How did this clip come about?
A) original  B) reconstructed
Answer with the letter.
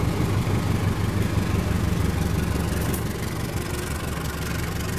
A